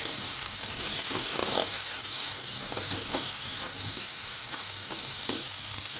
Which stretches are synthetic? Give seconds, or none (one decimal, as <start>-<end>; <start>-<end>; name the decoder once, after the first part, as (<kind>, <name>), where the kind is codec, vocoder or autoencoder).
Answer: 0.0-6.0 (codec, DAC)